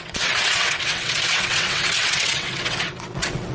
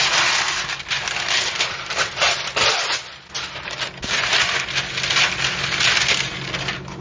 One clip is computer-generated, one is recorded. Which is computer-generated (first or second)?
first